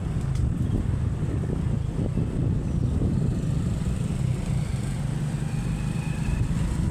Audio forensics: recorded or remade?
recorded